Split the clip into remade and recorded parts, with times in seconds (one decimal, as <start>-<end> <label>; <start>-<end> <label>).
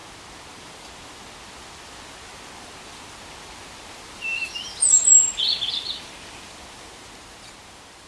0.0-8.1 recorded